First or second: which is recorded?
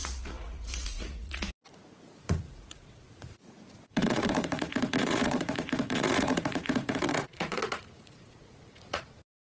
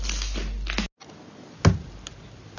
second